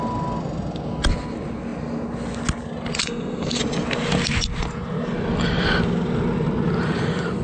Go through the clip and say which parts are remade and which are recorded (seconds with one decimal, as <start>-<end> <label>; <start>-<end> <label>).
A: 0.0-3.0 recorded; 3.0-3.6 remade; 3.6-7.4 recorded